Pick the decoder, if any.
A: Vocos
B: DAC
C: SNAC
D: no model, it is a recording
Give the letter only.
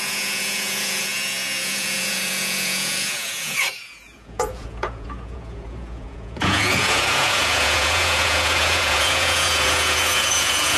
A